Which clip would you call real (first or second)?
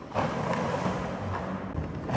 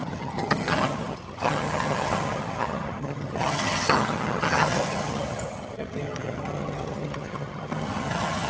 first